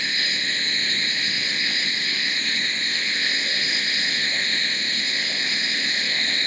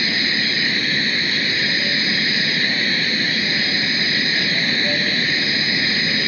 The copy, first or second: first